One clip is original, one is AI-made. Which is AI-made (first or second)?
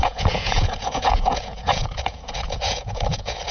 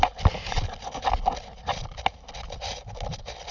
first